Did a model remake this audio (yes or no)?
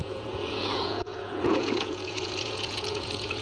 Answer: yes